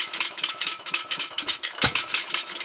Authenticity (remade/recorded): remade